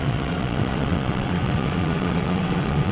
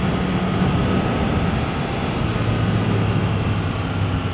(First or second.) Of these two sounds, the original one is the second